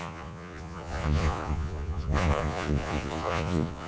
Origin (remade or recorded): remade